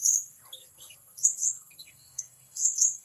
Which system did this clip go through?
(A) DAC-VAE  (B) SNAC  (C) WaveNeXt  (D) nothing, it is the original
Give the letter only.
B